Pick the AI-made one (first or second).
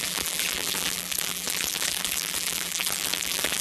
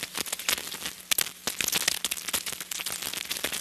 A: first